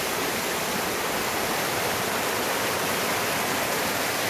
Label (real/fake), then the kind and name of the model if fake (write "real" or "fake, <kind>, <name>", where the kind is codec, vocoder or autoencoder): real